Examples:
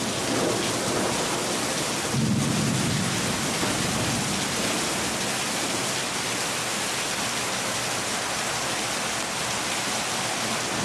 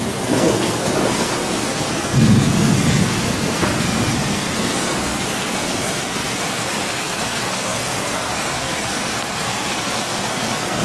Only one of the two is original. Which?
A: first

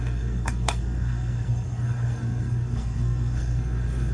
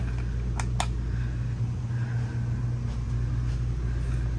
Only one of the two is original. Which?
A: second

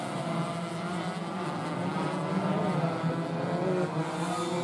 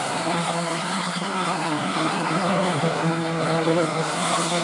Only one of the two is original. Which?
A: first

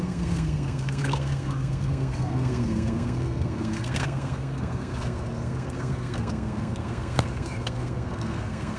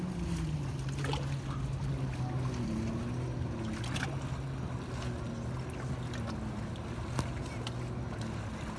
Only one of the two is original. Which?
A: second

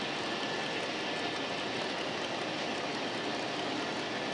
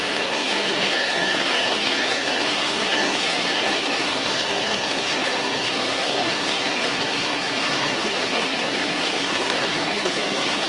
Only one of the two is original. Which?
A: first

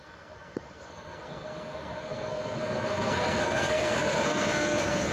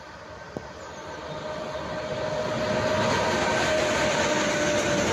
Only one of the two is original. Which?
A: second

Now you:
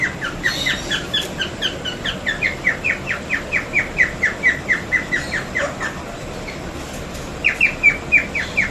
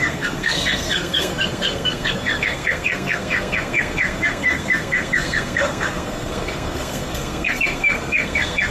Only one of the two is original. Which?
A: first